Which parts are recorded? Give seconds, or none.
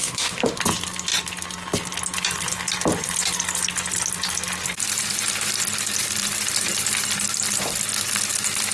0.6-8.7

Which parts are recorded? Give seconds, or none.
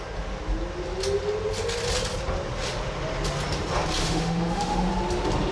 0.0-4.0; 4.9-5.5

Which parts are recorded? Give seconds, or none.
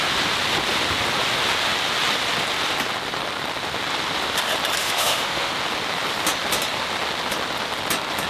0.0-4.8; 5.5-8.3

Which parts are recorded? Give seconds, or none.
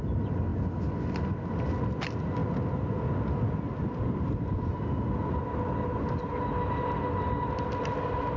0.0-8.4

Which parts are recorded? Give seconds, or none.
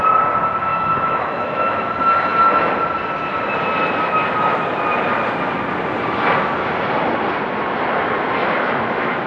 0.0-0.7; 1.9-8.4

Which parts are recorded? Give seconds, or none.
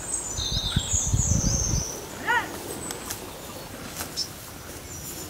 0.0-5.3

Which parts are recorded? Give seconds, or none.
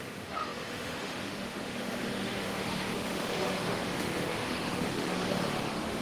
none